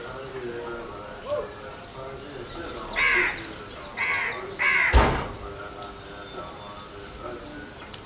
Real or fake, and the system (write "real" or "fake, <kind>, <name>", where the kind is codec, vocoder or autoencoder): real